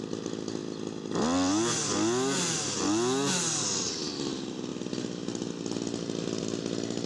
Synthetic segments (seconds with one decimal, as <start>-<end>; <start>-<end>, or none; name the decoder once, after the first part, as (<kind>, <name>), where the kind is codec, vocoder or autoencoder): none